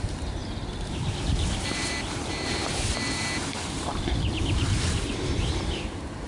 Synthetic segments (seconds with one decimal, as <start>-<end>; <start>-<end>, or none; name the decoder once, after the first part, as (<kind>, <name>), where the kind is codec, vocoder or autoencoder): 0.0-0.4 (vocoder, BigVGAN v2); 0.9-6.3